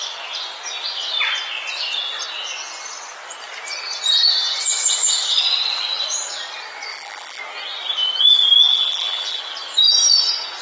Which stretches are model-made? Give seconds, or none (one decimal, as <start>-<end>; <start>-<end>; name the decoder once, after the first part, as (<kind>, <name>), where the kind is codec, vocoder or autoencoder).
6.9-7.4 (vocoder, BigVGAN v2); 8.7-9.4